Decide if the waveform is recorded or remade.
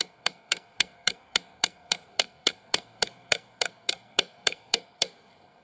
remade